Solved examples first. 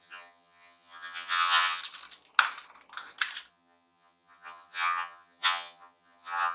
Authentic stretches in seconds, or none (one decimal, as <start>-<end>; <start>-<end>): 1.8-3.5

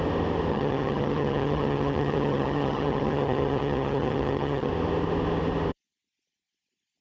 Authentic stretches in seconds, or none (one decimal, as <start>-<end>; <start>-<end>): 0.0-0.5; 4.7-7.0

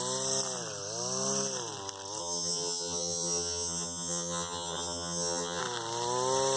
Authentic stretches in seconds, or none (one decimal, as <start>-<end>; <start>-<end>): 0.0-2.2; 5.6-6.6

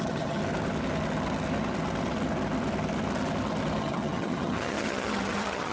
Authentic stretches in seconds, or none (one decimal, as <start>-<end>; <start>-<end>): 0.4-3.8

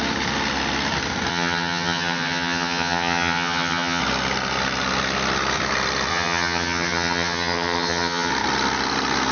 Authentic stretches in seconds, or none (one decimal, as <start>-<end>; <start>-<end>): 0.0-1.3; 4.0-6.1; 8.3-9.3